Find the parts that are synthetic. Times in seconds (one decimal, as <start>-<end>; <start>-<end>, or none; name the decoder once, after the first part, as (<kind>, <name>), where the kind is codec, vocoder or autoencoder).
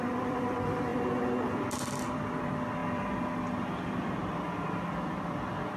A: 0.0-0.9 (vocoder, BigVGAN v2); 2.1-5.8